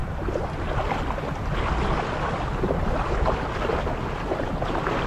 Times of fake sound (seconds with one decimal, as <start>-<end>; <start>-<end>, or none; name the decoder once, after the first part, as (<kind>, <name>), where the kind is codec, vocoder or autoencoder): none